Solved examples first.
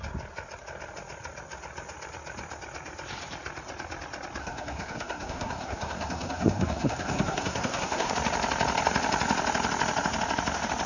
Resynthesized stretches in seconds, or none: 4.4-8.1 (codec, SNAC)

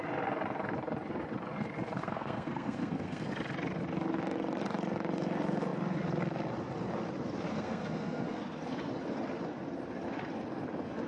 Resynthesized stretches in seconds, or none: 2.0-3.3 (codec, SNAC); 7.5-8.4

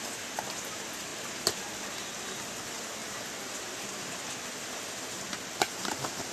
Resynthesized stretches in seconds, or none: none